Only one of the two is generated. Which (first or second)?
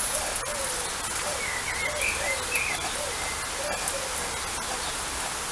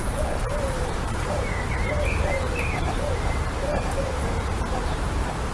second